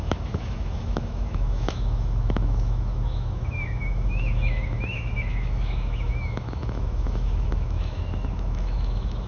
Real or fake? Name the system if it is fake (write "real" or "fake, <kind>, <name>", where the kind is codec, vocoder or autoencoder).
fake, autoencoder, DAC-VAE